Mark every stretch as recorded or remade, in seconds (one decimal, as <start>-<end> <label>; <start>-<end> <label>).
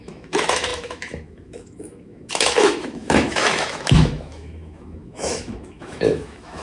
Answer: 0.0-6.6 remade